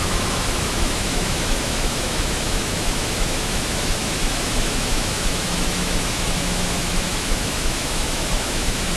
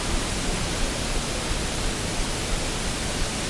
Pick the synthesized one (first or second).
first